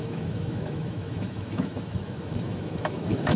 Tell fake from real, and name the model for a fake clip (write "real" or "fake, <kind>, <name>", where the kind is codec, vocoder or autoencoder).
fake, autoencoder, DAC-VAE